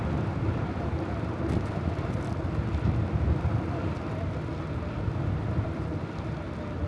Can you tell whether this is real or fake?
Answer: fake